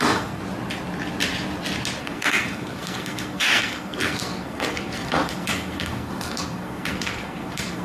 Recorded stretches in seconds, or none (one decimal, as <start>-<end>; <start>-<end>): 0.4-2.0